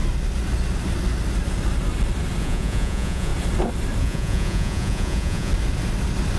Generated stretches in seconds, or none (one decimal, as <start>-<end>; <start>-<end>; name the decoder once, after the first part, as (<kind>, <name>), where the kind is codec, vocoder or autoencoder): 2.4-3.3 (vocoder, Vocos); 4.0-5.5